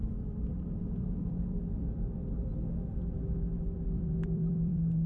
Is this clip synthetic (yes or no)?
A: yes